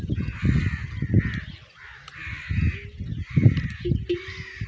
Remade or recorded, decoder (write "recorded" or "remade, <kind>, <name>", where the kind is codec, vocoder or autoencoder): recorded